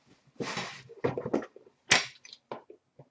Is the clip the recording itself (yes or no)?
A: yes